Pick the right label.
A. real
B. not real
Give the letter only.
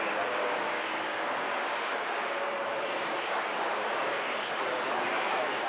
B